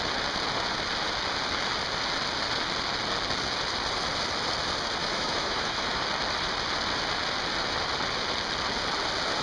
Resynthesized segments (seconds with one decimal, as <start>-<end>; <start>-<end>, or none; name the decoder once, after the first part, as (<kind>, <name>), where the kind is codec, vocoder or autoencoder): 5.0-6.0 (autoencoder, DAC-VAE)